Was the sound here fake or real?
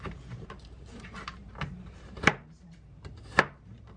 fake